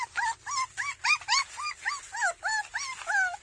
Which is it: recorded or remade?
recorded